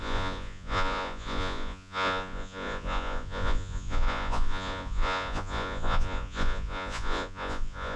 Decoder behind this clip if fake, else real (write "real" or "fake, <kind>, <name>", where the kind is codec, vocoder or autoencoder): fake, vocoder, Vocos